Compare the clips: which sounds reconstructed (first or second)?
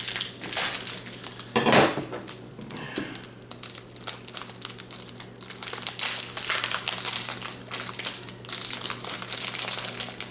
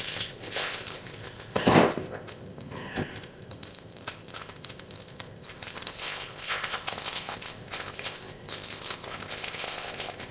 second